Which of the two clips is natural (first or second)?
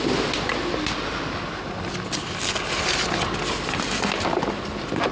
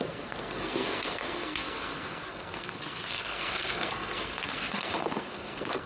first